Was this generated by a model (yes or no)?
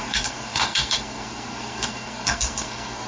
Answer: yes